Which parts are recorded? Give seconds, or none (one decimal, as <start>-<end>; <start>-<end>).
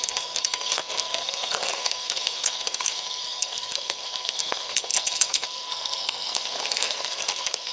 none